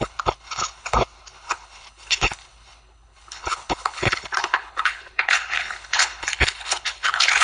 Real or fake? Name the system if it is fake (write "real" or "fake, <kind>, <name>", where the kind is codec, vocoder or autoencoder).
fake, codec, HILCodec